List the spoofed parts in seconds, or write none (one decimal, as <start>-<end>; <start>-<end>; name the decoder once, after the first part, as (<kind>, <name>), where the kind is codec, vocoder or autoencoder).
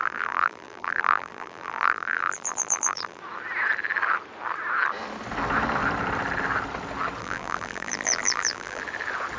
0.0-3.2 (vocoder, BigVGAN v2); 7.2-8.8